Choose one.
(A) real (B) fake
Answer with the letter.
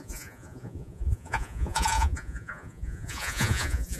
B